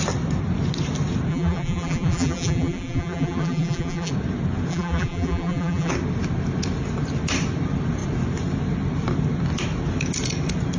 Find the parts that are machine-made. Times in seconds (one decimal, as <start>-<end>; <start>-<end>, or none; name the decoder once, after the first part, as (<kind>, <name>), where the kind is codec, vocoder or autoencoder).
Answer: 1.3-4.1 (vocoder, BigVGAN v2); 4.7-5.9